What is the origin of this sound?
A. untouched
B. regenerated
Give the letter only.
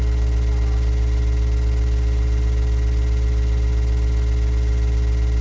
A